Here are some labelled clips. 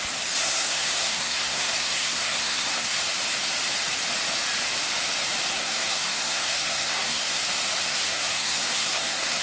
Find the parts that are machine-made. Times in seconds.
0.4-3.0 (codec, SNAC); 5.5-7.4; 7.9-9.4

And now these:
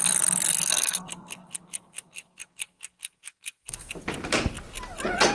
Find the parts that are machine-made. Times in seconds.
0.7-3.9 (codec, SNAC)

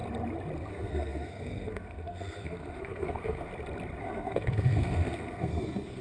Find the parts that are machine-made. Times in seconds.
0.7-3.5 (codec, SNAC); 4.0-6.0